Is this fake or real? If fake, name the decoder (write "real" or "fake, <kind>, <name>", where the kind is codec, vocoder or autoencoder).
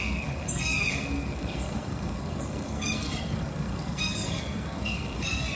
fake, codec, SNAC